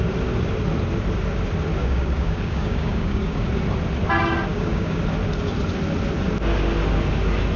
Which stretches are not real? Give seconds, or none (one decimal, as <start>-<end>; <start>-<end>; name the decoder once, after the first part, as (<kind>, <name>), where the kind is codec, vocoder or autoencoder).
1.8-3.5 (codec, DAC); 4.5-5.0